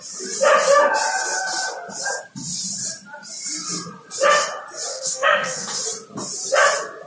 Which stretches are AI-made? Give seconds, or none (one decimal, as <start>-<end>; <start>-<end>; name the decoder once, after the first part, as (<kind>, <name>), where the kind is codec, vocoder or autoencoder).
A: 4.9-5.8 (codec, SNAC)